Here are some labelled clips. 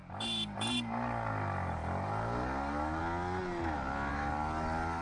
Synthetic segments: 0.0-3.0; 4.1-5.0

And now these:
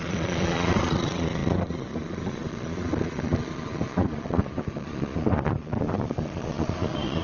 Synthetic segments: 0.0-7.2

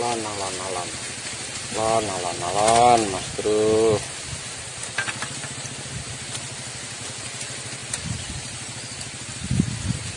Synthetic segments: none

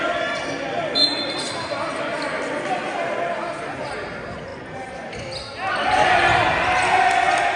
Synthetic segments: none

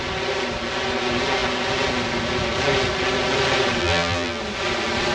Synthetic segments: 3.8-4.4

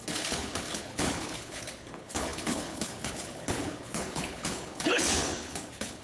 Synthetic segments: 0.0-6.0

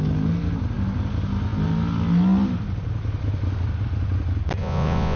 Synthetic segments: 4.6-5.2

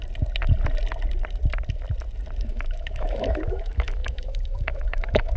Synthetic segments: 2.4-5.4